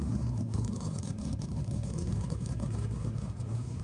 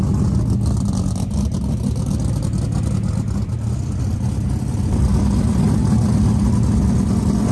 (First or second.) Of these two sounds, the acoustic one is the second